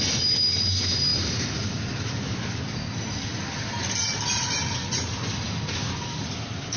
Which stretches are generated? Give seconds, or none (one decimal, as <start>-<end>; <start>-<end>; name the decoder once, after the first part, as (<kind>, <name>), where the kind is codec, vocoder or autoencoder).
none